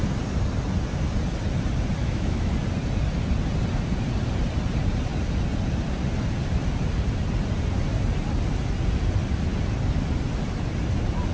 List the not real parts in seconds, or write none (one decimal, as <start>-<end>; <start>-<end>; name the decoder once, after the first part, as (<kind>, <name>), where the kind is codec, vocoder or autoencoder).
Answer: 2.0-2.5 (autoencoder, DAC-VAE)